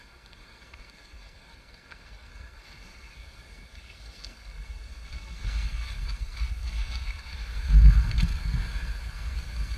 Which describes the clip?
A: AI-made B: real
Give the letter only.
A